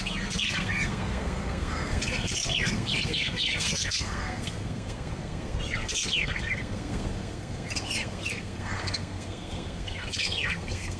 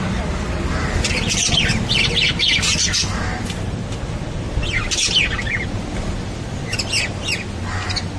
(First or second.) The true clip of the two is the second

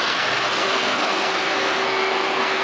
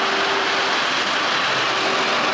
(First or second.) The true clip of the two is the second